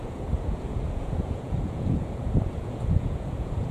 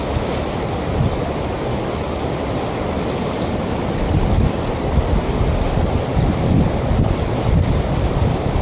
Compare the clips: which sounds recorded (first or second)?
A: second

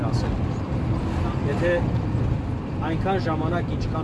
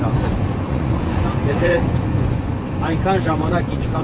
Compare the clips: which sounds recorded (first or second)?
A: first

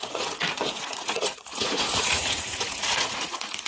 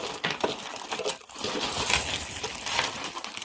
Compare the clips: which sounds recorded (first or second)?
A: second